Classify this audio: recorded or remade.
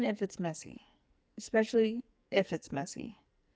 remade